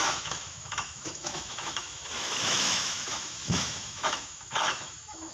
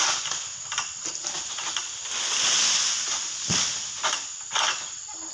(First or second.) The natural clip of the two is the second